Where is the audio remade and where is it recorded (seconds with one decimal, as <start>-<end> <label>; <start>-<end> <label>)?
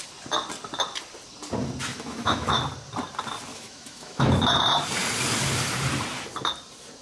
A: 0.0-1.9 recorded; 1.9-2.6 remade; 2.6-3.5 recorded; 3.5-4.3 remade; 4.3-7.0 recorded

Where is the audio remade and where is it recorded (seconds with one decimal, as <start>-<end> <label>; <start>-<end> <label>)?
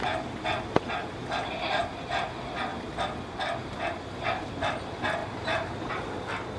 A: 0.0-5.2 recorded; 5.2-5.9 remade; 5.9-6.6 recorded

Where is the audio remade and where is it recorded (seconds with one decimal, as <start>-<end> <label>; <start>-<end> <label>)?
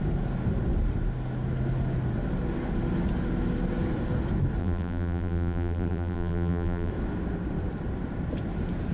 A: 0.0-4.6 recorded; 4.6-6.9 remade; 6.9-8.9 recorded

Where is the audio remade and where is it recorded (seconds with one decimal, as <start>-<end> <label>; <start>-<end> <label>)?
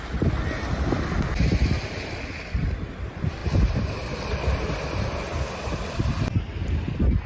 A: 0.0-7.3 recorded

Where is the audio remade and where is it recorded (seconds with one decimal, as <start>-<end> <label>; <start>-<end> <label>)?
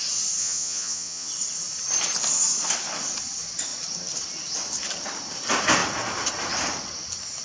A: 0.0-0.4 recorded; 0.4-1.3 remade; 1.3-7.4 recorded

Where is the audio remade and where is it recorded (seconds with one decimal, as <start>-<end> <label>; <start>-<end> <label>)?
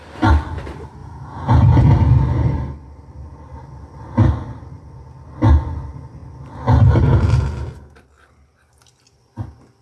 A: 0.0-1.0 recorded; 1.0-1.9 remade; 1.9-9.8 recorded